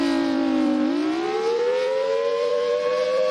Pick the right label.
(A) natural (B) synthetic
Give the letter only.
B